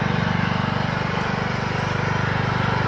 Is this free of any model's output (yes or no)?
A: yes